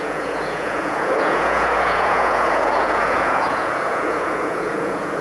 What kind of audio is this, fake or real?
fake